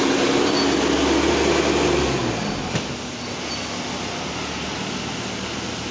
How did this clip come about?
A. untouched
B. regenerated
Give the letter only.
A